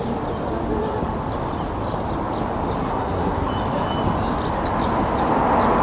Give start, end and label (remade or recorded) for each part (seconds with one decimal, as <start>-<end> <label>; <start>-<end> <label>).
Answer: 0.0-2.8 recorded; 2.8-3.5 remade; 3.5-5.8 recorded